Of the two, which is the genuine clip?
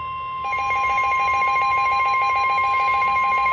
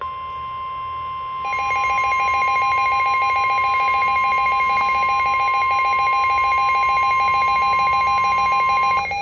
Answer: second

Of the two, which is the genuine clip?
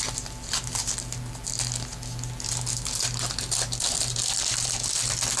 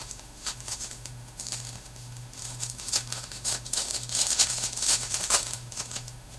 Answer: first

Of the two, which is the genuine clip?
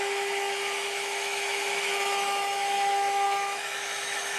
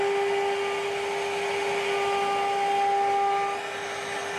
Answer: second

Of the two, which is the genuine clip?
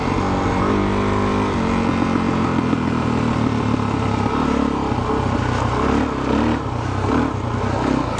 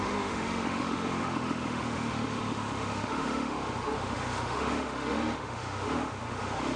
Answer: first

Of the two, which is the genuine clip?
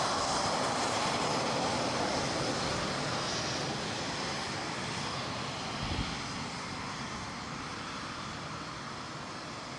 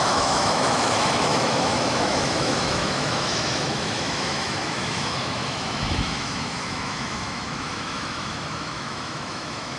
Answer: first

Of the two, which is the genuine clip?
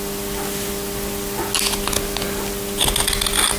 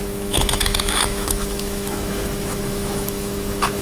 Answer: first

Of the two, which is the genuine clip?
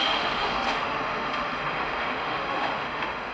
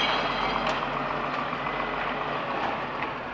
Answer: second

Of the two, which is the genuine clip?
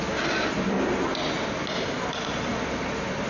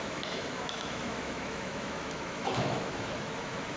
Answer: first